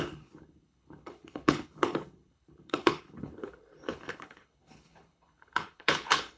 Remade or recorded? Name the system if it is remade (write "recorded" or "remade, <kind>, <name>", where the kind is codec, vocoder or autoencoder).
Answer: remade, codec, HILCodec